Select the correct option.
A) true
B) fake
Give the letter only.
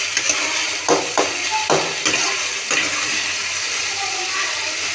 B